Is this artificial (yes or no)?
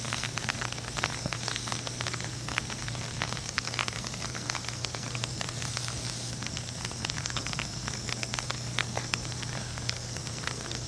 yes